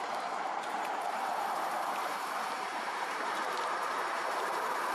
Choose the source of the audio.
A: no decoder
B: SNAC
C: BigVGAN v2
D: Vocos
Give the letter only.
C